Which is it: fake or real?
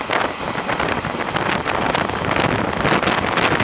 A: real